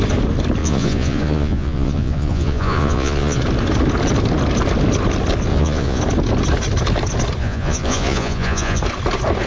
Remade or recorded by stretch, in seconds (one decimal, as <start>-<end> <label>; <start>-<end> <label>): 0.0-0.6 recorded; 0.6-3.4 remade; 3.4-5.5 recorded; 5.5-6.0 remade; 6.0-7.4 recorded; 7.4-8.8 remade; 8.8-9.5 recorded